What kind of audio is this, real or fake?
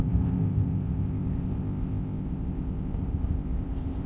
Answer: fake